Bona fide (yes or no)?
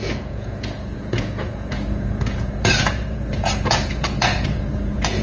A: no